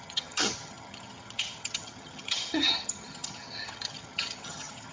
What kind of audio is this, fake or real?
fake